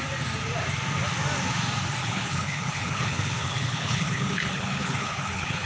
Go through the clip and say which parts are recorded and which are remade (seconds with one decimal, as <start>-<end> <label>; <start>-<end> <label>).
0.0-2.0 recorded; 2.0-5.7 remade